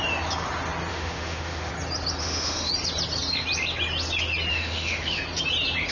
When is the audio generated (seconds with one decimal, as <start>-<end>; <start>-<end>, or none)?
0.9-1.7; 2.2-2.7; 4.5-5.2

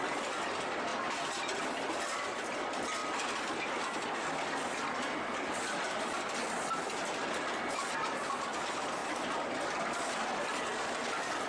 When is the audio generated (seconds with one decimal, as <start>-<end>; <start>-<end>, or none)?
none

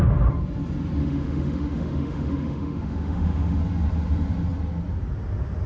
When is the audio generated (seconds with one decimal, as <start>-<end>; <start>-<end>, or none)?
1.0-3.6